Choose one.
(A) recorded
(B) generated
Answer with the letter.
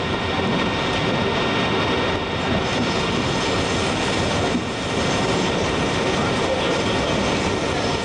A